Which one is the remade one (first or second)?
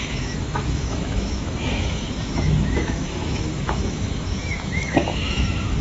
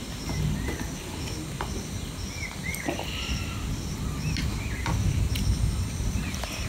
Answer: first